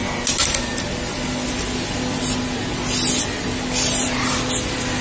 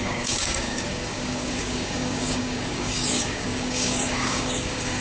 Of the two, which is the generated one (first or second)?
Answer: second